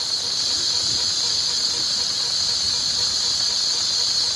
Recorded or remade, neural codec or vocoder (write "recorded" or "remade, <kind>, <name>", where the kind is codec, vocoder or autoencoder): remade, vocoder, BigVGAN v2